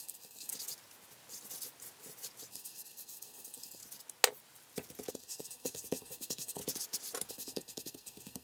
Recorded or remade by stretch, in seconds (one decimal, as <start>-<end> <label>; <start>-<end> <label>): 0.0-0.5 remade; 0.5-2.5 recorded; 2.5-3.8 remade; 3.8-5.1 recorded; 5.1-6.6 remade; 6.6-7.3 recorded; 7.3-8.4 remade